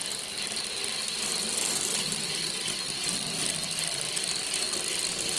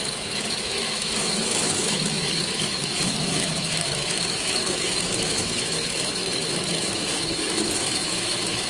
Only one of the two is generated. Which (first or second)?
second